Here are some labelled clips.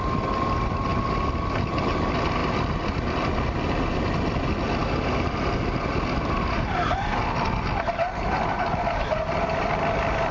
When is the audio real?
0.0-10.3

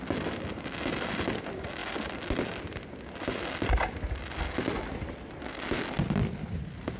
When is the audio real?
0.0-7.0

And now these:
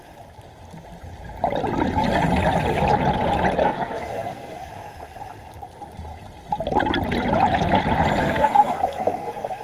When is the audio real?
0.0-3.6; 4.7-8.2

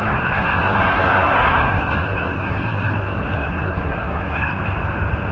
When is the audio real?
4.6-5.3

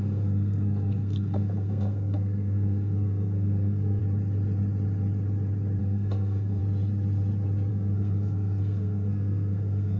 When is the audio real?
4.0-5.8; 6.6-7.7

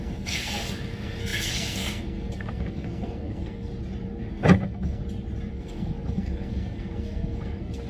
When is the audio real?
3.7-4.3; 5.0-5.5

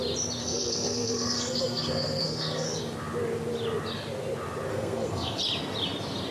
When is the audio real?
0.0-0.4; 2.8-4.7; 5.4-6.3

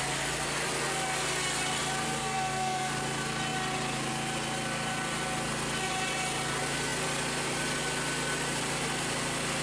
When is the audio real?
0.0-2.2; 2.9-9.6